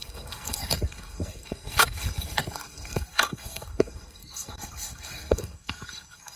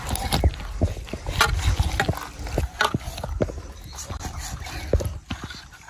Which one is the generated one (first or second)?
first